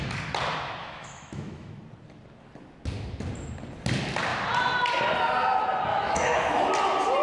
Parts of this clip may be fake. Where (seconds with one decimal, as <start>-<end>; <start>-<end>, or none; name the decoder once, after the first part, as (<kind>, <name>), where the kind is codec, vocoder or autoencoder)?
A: 0.8-1.8 (autoencoder, DAC-VAE); 5.9-6.7